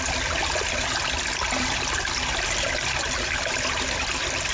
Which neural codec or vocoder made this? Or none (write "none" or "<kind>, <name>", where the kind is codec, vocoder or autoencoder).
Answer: none